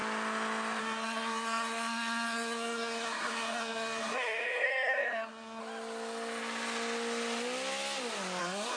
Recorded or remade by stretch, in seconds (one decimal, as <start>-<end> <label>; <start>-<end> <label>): 0.0-0.8 recorded; 0.8-5.6 remade; 5.6-8.4 recorded; 8.4-8.8 remade